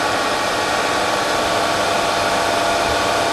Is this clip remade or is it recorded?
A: recorded